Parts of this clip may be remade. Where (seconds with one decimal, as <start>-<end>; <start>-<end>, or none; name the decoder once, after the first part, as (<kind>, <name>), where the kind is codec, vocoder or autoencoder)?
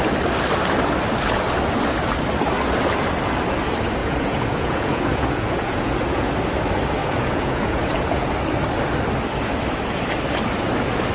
4.0-6.3 (vocoder, Vocos); 7.0-8.3